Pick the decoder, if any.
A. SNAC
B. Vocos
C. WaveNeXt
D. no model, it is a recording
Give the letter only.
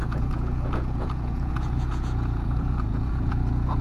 B